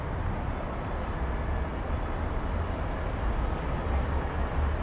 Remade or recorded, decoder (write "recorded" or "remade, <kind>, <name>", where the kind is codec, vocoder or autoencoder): recorded